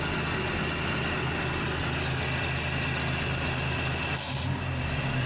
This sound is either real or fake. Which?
real